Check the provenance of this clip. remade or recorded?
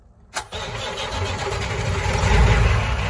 recorded